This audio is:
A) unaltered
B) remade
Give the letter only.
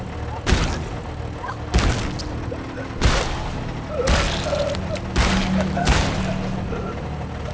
A